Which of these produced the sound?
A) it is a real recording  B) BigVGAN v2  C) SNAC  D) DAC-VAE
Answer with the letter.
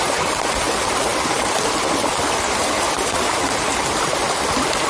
B